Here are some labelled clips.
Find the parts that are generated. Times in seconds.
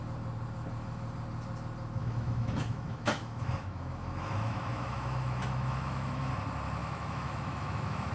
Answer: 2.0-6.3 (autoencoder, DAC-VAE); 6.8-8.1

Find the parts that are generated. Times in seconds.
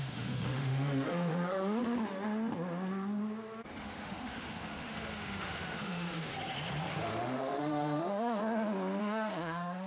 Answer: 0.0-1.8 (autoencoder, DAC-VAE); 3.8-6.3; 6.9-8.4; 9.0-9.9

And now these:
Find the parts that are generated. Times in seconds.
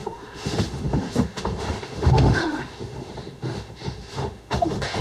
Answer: 0.0-5.0 (autoencoder, DAC-VAE)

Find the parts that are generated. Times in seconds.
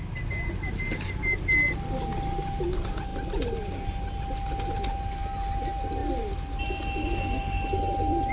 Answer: none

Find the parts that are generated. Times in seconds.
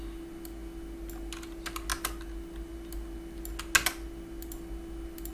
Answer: none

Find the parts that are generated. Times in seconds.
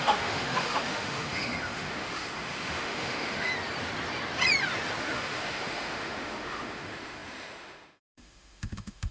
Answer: 0.0-3.5 (autoencoder, DAC-VAE); 5.0-9.1